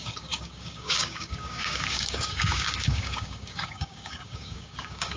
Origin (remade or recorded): remade